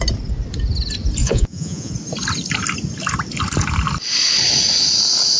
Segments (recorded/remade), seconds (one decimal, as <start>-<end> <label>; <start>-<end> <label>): 0.0-1.2 recorded; 1.2-1.9 remade; 1.9-5.4 recorded